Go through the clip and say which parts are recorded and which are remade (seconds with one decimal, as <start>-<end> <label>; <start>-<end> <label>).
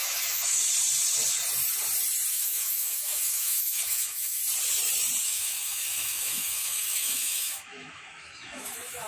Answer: 0.0-0.6 remade; 0.6-2.3 recorded; 2.3-4.4 remade; 4.4-5.2 recorded; 5.2-9.1 remade